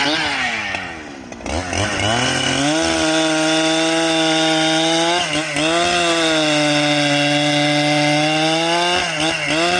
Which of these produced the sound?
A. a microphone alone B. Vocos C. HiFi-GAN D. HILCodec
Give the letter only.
A